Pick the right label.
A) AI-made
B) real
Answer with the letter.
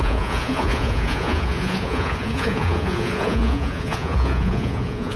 A